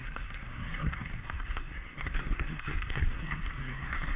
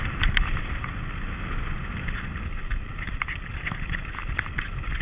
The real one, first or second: second